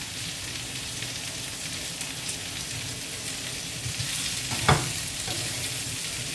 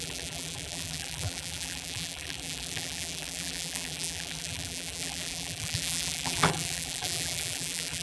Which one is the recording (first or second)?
first